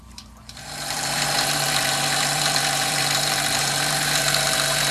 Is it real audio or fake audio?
fake